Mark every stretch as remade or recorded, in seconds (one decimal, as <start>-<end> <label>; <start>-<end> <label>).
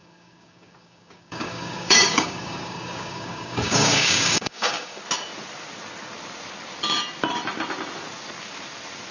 0.0-5.0 remade; 5.0-9.1 recorded